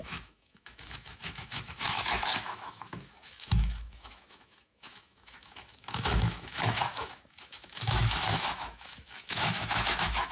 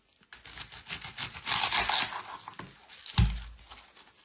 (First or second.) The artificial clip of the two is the first